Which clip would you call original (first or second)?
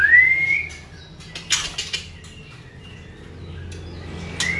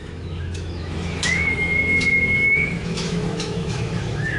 first